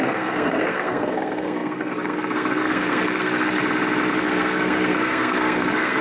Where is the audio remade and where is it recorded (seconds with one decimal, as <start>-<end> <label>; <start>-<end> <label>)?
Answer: 0.0-3.6 remade; 3.6-4.2 recorded; 4.2-6.0 remade